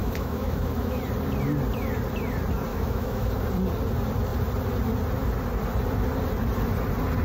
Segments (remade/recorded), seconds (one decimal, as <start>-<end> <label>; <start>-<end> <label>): 0.0-1.0 remade; 1.0-2.7 recorded; 2.7-3.3 remade; 3.3-7.2 recorded

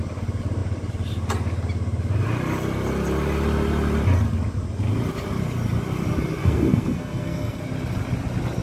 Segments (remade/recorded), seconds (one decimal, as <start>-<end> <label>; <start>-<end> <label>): 0.0-6.4 recorded; 6.4-7.6 remade; 7.6-8.6 recorded

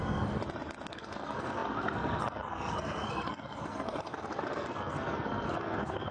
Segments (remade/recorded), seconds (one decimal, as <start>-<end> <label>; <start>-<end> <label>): 0.0-0.4 remade; 0.4-0.9 recorded; 0.9-6.1 remade

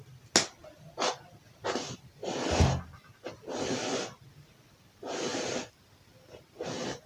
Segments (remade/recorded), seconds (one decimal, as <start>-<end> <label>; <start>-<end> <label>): 0.0-0.6 recorded; 0.6-1.1 remade; 1.1-5.3 recorded; 5.3-5.8 remade; 5.8-7.1 recorded